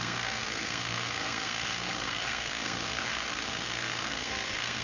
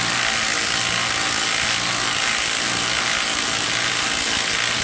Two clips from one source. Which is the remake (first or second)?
first